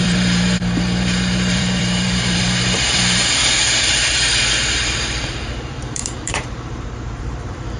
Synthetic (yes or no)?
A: yes